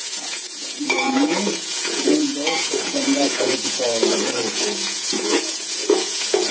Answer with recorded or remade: remade